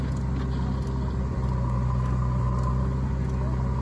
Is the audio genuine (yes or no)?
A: yes